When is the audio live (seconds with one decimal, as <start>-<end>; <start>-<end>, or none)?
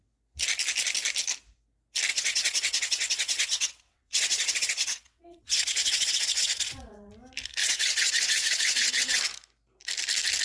0.0-2.1; 7.1-7.6; 9.2-10.4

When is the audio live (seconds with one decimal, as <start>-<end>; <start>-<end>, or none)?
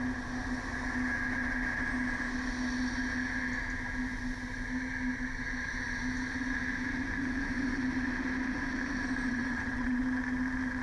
0.0-9.3; 10.0-10.8